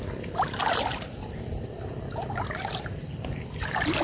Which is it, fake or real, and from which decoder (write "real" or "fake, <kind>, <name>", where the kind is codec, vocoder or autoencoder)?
real